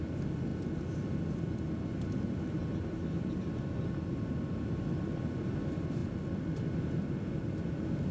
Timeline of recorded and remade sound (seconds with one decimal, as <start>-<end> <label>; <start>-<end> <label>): 0.0-8.1 recorded